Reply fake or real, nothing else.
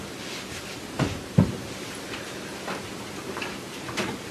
real